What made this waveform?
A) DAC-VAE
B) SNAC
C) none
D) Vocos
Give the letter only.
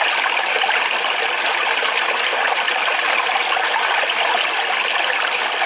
C